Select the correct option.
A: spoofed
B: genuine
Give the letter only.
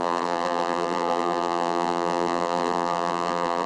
A